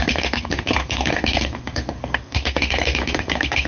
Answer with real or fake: fake